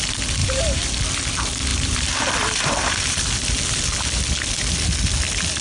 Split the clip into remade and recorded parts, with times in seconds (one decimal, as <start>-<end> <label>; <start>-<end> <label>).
0.0-0.4 recorded; 0.4-0.9 remade; 0.9-1.7 recorded; 1.7-2.3 remade; 2.3-5.6 recorded